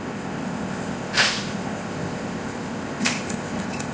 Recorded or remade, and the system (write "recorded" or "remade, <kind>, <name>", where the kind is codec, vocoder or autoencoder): remade, codec, ZipCodec